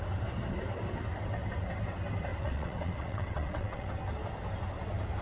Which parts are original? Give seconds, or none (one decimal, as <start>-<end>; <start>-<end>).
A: 0.0-2.3; 3.9-5.2

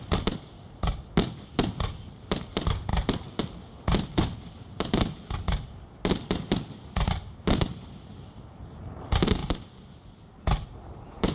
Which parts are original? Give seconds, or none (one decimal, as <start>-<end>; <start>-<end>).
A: 0.0-11.3